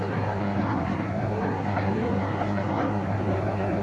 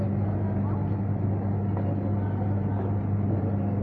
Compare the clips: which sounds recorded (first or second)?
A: second